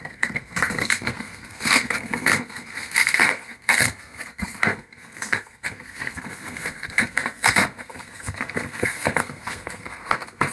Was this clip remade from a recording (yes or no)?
yes